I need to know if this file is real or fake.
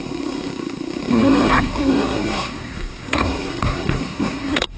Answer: fake